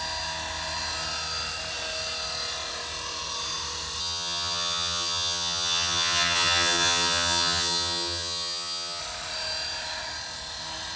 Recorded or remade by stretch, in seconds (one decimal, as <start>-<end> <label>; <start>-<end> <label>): 0.0-4.0 recorded; 4.0-9.0 remade; 9.0-11.0 recorded

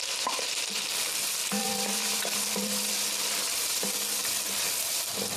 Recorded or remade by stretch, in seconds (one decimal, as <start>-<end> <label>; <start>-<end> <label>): 0.0-1.4 recorded; 1.4-3.8 remade; 3.8-4.2 recorded; 4.2-5.4 remade

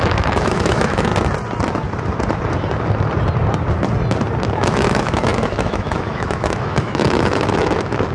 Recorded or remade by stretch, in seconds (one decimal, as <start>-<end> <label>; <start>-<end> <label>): 0.0-1.1 remade; 1.1-4.5 recorded; 4.5-8.1 remade

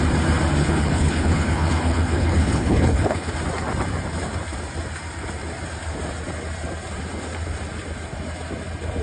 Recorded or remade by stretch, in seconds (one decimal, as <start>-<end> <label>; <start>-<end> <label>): 0.0-0.6 recorded; 0.6-3.3 remade; 3.3-9.0 recorded

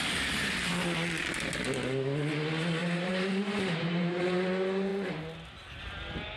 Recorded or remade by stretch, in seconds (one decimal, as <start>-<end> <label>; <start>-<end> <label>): 0.0-2.8 recorded; 2.8-4.2 remade; 4.2-6.4 recorded

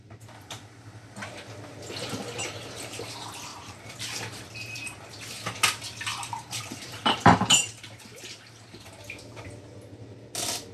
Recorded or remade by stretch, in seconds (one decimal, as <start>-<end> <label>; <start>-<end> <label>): 0.0-3.5 recorded; 3.5-4.4 remade; 4.4-6.1 recorded; 6.1-8.0 remade; 8.0-10.7 recorded

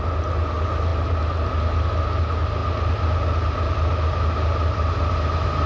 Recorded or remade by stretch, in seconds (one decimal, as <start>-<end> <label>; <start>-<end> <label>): 0.0-5.7 recorded

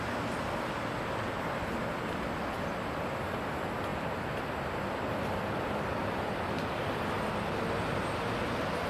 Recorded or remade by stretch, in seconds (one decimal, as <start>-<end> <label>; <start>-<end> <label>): 0.0-8.9 recorded